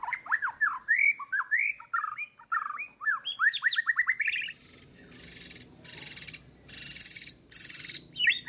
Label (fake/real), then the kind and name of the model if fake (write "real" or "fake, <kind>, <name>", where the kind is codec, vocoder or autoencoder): real